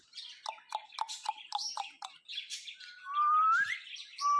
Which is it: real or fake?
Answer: real